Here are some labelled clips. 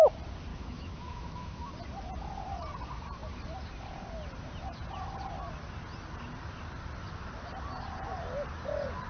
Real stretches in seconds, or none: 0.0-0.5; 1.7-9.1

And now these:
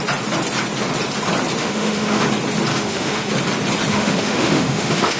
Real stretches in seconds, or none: 0.0-1.6; 2.2-2.7; 3.3-3.9

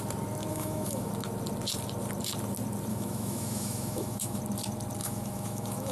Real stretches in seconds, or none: 0.0-0.5; 1.1-2.9; 4.4-5.0

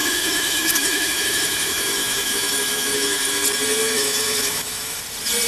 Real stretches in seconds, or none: 3.3-3.8; 5.0-5.5

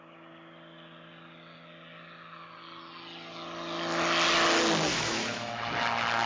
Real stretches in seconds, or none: 0.0-4.9; 5.6-6.3

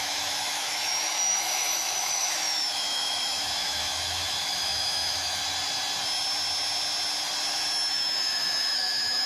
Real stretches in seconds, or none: 5.4-7.9

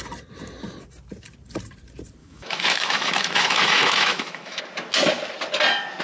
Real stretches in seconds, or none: 0.0-2.2; 4.6-6.0

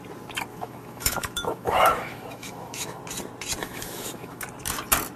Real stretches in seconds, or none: 0.0-0.5; 3.0-3.6; 4.4-5.2